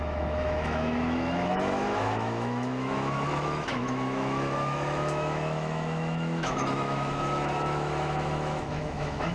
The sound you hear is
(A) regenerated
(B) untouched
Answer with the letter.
A